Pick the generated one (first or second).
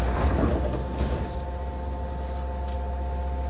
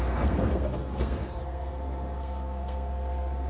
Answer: second